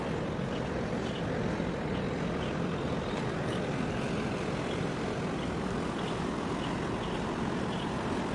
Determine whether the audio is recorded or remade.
recorded